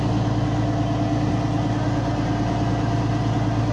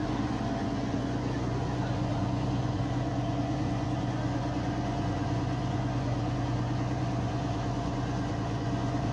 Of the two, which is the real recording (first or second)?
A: first